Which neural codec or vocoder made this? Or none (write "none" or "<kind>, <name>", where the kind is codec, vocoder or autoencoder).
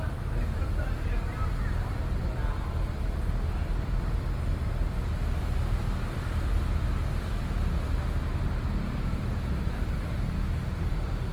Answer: none